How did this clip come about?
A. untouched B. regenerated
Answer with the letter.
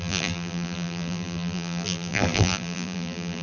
B